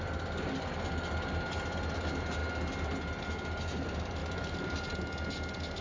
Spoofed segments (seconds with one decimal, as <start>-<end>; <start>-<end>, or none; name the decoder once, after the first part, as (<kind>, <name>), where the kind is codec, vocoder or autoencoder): none